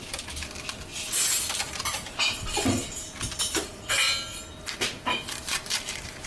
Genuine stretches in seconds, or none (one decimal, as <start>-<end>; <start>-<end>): 0.9-4.5